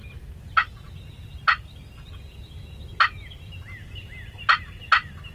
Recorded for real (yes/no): yes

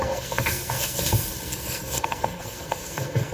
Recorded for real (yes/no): no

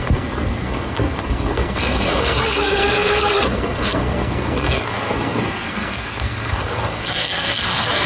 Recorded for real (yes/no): no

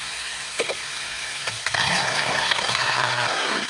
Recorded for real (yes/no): no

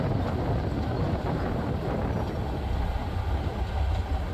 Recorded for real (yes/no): yes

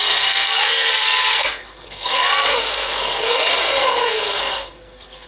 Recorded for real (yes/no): no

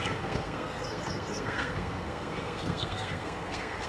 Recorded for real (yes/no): no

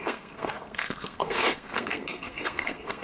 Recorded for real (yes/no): no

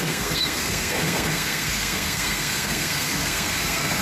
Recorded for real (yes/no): no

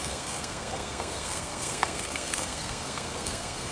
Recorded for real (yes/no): no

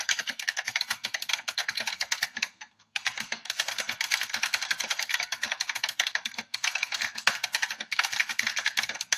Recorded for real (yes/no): no